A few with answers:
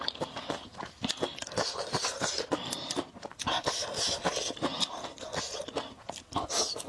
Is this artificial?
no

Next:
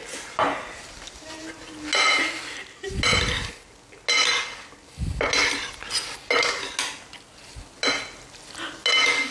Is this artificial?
no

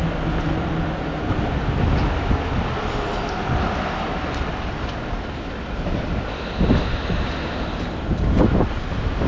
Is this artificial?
no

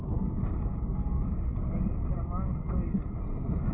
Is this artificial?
no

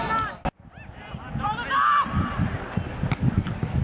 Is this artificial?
no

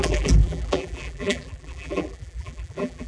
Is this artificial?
yes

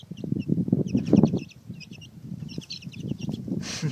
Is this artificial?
yes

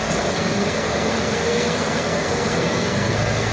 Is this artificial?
yes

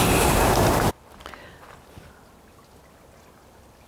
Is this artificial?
no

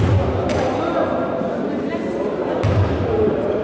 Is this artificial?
no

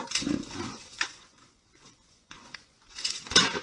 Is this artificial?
yes